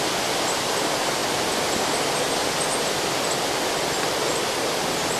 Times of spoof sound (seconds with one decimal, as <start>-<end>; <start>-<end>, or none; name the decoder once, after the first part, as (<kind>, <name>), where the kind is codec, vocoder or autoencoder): none

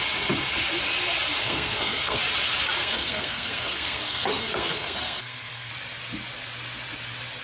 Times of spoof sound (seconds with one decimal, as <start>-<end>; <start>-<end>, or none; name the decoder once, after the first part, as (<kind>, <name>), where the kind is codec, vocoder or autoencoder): 1.4-2.2 (codec, SNAC); 2.8-5.7

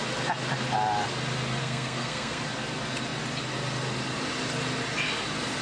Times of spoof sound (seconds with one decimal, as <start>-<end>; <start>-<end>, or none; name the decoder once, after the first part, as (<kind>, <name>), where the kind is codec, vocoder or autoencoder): 1.6-2.4 (codec, SNAC)

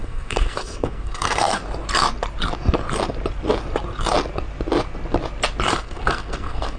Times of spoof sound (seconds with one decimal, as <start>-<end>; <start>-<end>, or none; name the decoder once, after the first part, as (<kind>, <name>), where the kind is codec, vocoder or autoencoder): 0.0-1.6 (codec, SNAC); 5.7-6.8

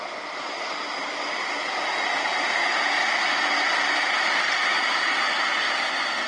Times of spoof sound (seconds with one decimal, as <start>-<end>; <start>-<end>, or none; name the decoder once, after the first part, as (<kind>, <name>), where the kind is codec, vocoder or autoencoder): none